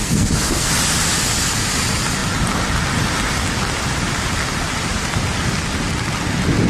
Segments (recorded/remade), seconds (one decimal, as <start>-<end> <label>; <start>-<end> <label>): 0.0-0.7 remade; 0.7-6.7 recorded